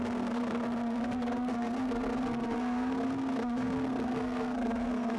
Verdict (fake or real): fake